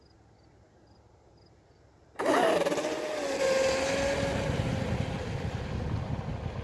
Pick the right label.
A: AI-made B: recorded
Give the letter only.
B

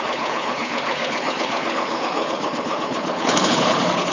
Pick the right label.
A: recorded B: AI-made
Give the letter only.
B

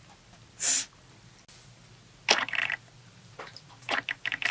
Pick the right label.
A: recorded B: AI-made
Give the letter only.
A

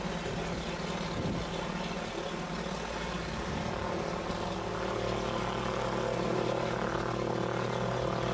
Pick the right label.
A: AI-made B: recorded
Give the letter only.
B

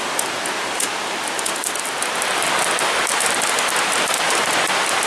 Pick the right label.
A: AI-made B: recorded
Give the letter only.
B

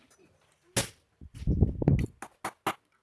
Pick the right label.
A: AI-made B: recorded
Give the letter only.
B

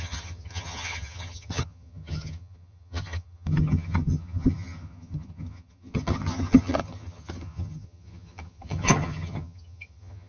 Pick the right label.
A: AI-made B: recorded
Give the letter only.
A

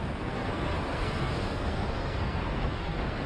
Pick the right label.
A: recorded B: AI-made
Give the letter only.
B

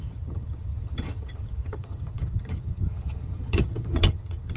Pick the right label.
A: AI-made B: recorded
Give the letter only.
A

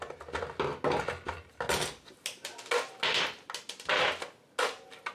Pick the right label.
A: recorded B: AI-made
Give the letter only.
A